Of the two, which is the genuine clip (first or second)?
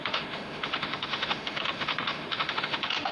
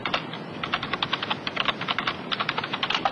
second